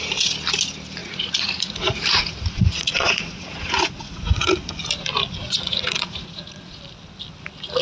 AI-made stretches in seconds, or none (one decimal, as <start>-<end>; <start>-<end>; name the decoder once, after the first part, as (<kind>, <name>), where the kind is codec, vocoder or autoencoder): 1.0-4.7 (vocoder, Vocos); 5.4-6.8

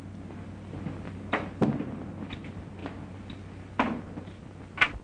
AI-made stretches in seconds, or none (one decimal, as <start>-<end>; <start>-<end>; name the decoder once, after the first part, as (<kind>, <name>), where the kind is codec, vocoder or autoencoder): none